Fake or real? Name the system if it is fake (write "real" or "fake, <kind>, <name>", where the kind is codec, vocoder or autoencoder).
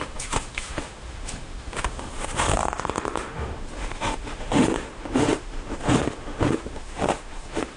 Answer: fake, autoencoder, DAC-VAE